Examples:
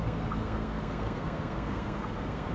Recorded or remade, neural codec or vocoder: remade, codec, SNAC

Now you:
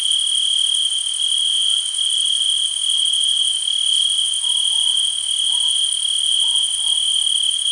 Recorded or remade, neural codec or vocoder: recorded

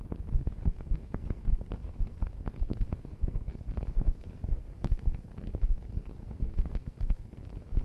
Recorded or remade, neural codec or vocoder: remade, codec, SNAC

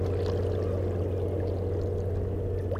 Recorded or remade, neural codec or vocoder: recorded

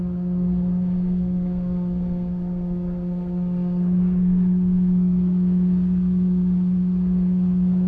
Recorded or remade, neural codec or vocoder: remade, codec, SNAC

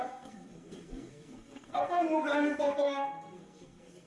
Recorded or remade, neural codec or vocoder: remade, codec, SNAC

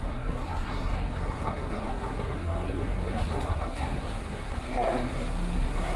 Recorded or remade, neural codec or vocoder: remade, codec, SNAC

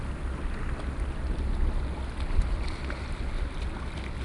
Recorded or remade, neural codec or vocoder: recorded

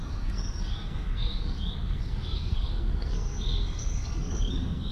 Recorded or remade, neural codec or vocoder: remade, codec, SNAC